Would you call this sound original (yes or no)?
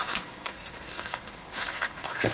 no